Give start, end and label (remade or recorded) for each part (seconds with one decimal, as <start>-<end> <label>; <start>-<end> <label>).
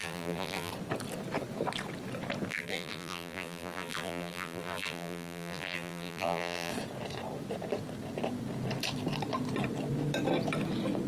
0.0-0.7 remade; 0.7-2.5 recorded; 2.5-6.7 remade; 6.7-11.1 recorded